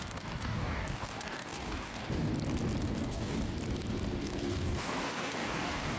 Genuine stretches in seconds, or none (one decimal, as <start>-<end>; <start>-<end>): 2.3-2.8; 3.5-4.2